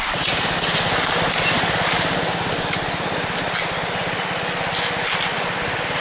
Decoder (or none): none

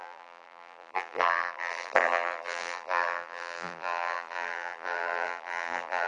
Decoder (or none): vocoder, BigVGAN v2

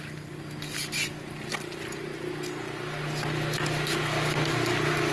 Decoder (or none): none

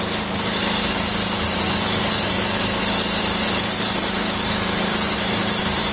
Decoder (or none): none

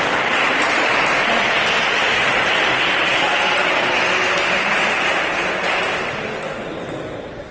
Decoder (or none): none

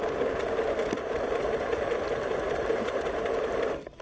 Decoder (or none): none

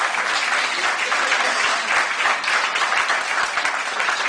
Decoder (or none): none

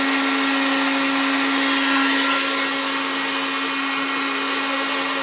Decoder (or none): none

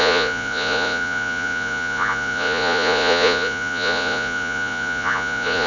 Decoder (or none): vocoder, Vocos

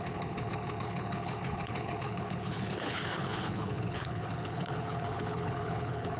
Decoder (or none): codec, HILCodec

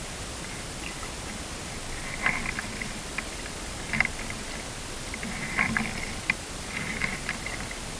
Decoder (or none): none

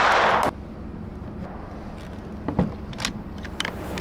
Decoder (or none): none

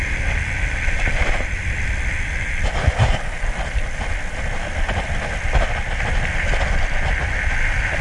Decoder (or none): none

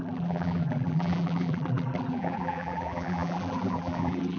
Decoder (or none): vocoder, BigVGAN v2